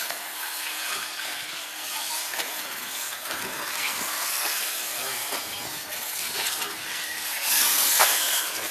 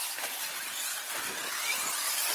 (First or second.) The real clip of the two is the second